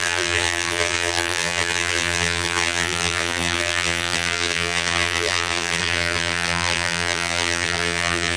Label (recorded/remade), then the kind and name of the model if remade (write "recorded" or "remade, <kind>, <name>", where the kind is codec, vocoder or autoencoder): remade, vocoder, BigVGAN v2